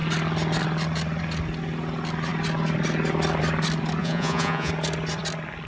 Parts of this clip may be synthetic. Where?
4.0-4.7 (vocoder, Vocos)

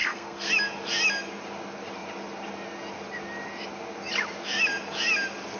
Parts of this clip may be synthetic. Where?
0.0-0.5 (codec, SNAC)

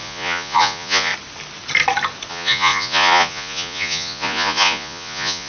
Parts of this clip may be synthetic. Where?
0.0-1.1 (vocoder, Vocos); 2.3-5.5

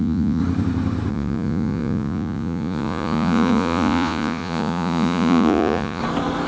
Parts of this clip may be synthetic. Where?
0.0-0.4 (vocoder, Vocos); 1.1-6.0

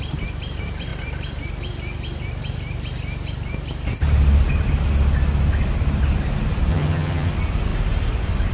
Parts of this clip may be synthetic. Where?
6.7-7.3 (vocoder, HiFi-GAN)

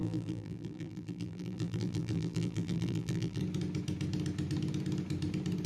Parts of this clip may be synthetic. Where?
0.0-3.4 (vocoder, BigVGAN v2)

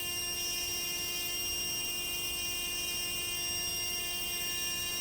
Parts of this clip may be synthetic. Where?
0.0-5.0 (autoencoder, DAC-VAE)

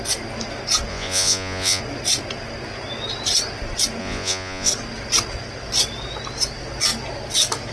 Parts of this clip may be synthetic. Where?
0.9-1.8 (vocoder, Vocos); 4.0-4.7